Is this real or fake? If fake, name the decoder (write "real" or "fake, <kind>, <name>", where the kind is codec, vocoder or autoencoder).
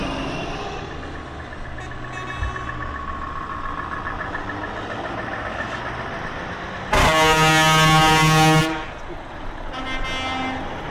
real